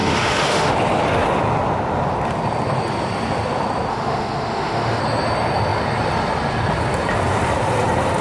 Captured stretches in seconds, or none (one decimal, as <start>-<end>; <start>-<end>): 0.7-3.9; 5.0-8.2